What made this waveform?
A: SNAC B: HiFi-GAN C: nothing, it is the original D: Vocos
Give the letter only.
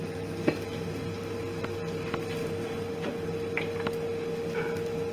C